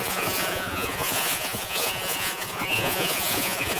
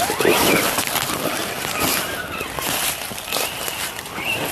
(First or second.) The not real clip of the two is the first